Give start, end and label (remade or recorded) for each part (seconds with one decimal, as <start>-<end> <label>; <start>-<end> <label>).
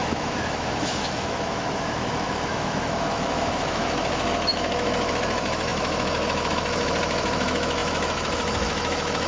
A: 0.0-9.3 remade